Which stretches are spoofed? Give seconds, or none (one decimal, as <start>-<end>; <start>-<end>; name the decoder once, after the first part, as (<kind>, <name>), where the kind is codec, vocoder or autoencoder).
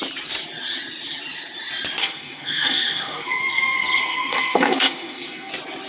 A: 2.0-5.5 (codec, SNAC)